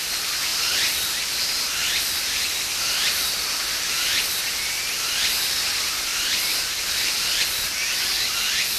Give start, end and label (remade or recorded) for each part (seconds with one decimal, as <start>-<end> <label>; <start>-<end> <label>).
0.0-6.1 recorded; 6.1-8.8 remade